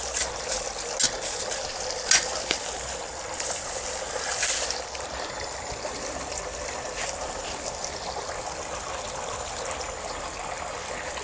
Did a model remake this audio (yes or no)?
no